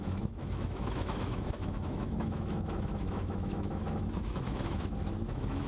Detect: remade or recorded remade